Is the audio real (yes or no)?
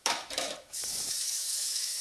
no